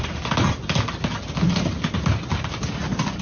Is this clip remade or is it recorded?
recorded